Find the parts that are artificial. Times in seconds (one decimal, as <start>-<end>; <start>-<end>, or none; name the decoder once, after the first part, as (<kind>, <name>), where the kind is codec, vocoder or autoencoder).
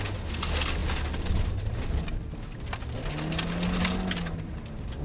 none